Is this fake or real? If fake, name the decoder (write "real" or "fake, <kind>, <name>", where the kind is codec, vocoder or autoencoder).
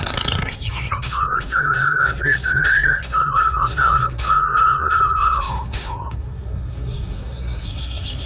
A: fake, codec, SNAC